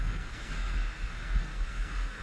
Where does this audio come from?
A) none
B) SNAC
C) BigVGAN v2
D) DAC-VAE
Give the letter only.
B